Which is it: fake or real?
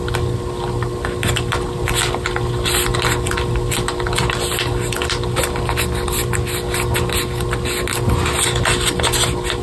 real